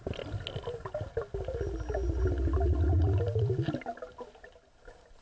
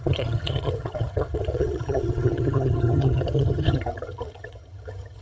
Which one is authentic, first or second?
first